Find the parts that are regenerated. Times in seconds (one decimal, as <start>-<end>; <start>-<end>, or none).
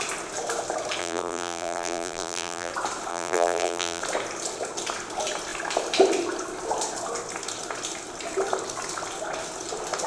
1.0-2.7; 3.1-4.0